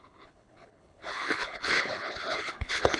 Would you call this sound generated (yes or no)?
yes